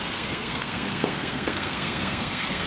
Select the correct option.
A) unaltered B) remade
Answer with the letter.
B